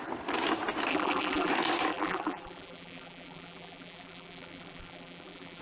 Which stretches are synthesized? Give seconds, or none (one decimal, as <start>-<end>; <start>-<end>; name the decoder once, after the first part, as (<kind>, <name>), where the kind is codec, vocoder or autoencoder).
0.9-1.5 (vocoder, BigVGAN v2); 1.9-5.6